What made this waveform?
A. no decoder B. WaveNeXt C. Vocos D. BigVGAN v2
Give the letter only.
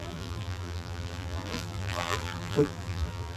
D